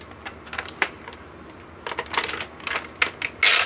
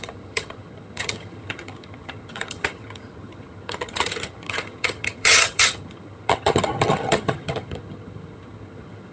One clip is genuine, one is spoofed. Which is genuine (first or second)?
first